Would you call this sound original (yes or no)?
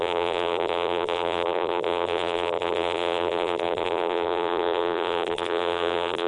no